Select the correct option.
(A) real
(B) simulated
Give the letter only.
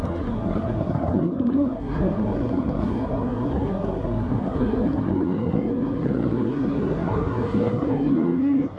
B